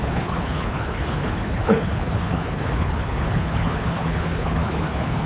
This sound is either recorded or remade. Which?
remade